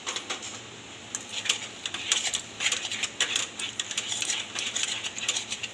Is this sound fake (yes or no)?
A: no